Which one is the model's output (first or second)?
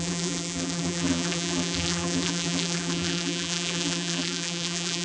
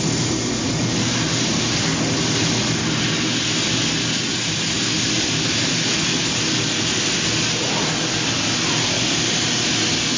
first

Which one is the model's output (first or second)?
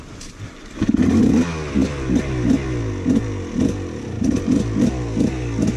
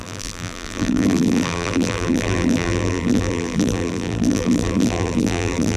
second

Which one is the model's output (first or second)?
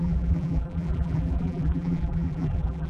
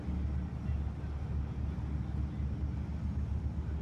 first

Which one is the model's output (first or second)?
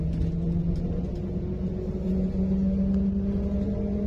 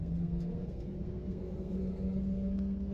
second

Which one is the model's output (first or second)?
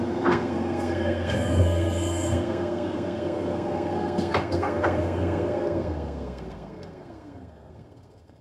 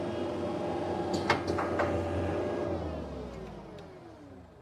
first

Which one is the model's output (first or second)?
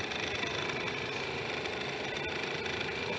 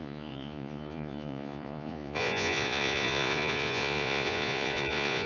second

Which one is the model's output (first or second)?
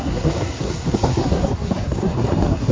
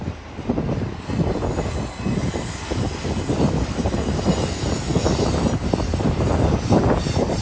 first